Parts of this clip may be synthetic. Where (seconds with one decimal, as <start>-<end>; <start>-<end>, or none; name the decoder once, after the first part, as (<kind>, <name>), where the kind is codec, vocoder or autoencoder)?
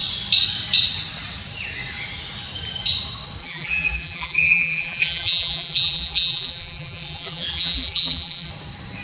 3.4-8.5 (vocoder, BigVGAN v2)